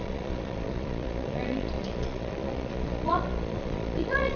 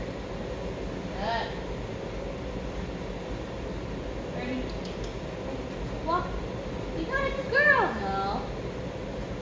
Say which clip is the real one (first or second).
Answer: second